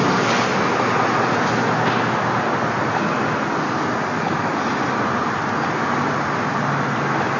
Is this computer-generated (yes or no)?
no